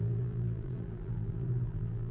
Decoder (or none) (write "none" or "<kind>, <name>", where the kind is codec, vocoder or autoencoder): vocoder, BigVGAN v2